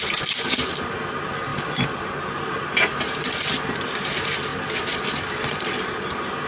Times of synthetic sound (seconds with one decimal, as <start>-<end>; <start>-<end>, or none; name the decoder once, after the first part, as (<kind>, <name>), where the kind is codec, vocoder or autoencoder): 1.5-4.0 (vocoder, BigVGAN v2); 4.5-5.0

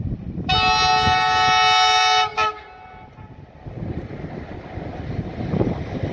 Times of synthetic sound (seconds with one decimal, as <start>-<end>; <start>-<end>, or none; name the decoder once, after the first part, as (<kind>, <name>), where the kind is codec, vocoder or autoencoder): none